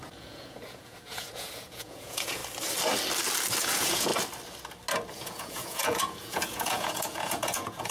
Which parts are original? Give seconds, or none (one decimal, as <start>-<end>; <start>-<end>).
2.4-3.6; 4.1-5.1